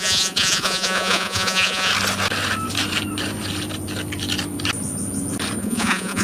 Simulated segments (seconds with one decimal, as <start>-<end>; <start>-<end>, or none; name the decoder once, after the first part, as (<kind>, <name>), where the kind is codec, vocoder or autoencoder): 0.0-1.9 (vocoder, Vocos); 5.6-6.2